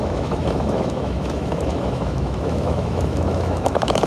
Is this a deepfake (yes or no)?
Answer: yes